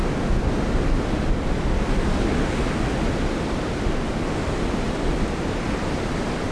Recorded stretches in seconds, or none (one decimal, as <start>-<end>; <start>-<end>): 0.0-6.5